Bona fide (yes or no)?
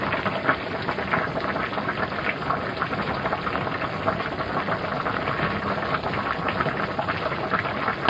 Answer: yes